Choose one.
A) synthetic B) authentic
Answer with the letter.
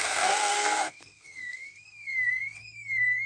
A